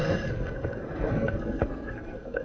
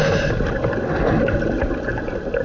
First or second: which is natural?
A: second